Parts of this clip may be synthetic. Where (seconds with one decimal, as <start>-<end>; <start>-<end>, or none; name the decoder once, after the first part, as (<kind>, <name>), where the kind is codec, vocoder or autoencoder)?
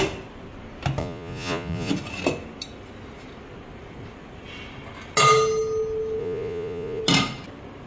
1.0-1.9 (vocoder, Vocos); 6.2-7.0